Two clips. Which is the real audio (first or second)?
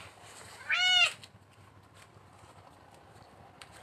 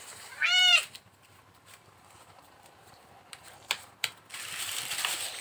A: first